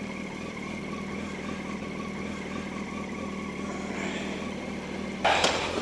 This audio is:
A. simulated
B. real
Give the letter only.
B